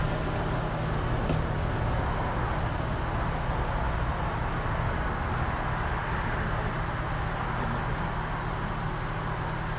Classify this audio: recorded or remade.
recorded